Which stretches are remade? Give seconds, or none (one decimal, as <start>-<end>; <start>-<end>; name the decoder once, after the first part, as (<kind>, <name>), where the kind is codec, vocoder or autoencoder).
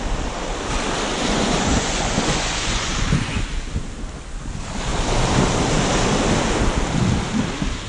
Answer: 1.1-3.5 (vocoder, Vocos)